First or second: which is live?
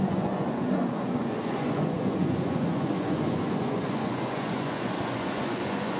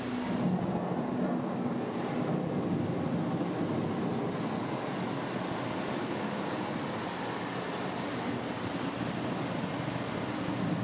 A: second